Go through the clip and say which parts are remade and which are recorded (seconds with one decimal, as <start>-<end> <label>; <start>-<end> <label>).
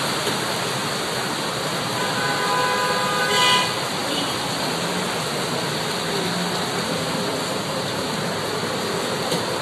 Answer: 0.0-4.0 recorded; 4.0-4.6 remade; 4.6-7.3 recorded; 7.3-8.2 remade; 8.2-9.6 recorded